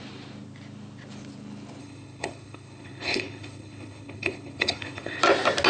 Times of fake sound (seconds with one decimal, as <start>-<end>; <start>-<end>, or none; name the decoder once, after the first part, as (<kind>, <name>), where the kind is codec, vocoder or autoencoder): 1.8-5.2 (codec, HILCodec)